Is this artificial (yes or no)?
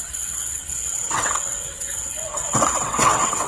yes